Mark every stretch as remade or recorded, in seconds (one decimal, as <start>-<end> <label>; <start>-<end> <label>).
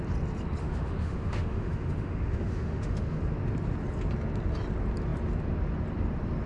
0.0-0.6 recorded; 0.6-3.2 remade; 3.2-6.5 recorded